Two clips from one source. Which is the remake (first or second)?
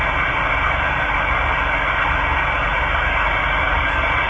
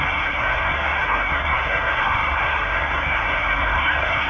second